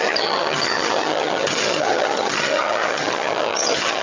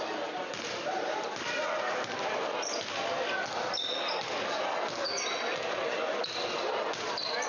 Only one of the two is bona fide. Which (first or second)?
second